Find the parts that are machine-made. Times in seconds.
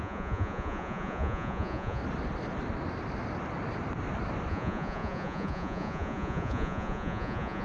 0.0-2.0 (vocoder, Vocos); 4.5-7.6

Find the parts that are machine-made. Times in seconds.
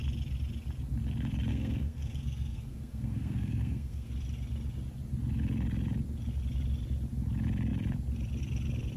1.5-4.1 (codec, SNAC)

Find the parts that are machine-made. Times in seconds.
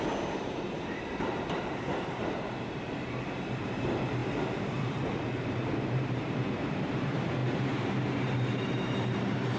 0.0-9.6 (vocoder, BigVGAN v2)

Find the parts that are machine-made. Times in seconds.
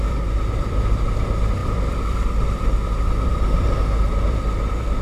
0.0-5.0 (vocoder, BigVGAN v2)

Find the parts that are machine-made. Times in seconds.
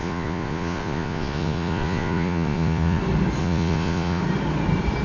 0.0-3.0 (vocoder, Vocos); 3.4-4.2